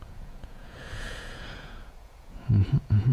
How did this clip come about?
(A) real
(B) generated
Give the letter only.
B